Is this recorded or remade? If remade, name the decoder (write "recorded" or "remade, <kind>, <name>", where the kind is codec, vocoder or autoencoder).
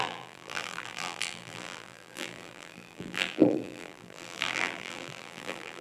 remade, vocoder, BigVGAN v2